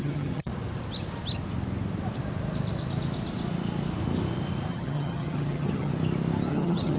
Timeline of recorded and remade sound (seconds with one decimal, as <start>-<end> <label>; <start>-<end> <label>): 0.0-0.5 remade; 0.5-4.7 recorded; 4.7-5.9 remade; 5.9-6.5 recorded; 6.5-7.0 remade